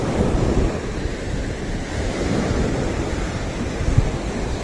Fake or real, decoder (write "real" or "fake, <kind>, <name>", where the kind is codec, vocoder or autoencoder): real